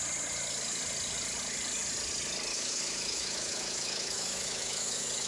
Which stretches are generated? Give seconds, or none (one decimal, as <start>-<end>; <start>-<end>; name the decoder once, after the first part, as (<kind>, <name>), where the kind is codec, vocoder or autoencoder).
2.5-5.3 (autoencoder, DAC-VAE)